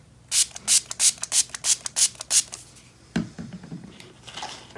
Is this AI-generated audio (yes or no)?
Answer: no